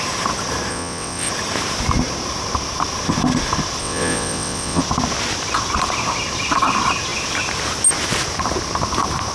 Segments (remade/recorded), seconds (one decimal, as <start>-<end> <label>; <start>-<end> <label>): 0.0-0.7 recorded; 0.7-1.3 remade; 1.3-3.8 recorded; 3.8-4.8 remade; 4.8-9.3 recorded